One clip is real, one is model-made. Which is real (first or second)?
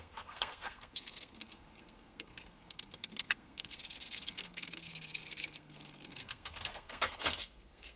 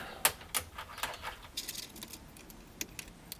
second